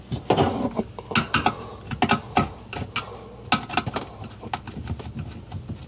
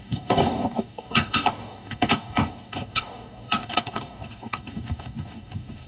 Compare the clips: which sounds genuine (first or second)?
first